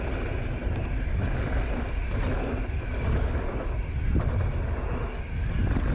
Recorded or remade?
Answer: recorded